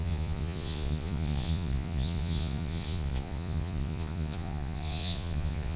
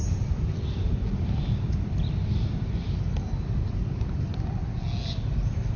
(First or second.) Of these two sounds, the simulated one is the first